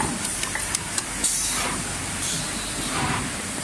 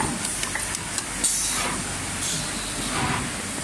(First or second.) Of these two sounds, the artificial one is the first